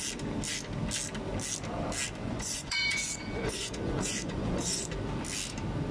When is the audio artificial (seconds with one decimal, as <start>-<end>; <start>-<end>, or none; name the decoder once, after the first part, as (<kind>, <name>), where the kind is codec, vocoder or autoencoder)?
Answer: 2.2-4.9 (vocoder, Vocos)